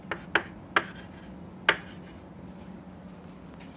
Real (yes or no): yes